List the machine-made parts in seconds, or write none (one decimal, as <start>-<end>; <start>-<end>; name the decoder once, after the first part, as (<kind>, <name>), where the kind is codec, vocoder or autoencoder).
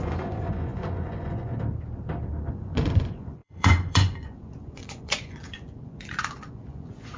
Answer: 0.0-1.5 (vocoder, Vocos); 2.5-7.2